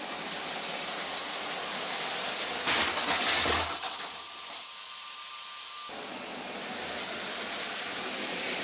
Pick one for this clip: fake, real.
real